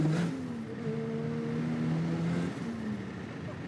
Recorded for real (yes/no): yes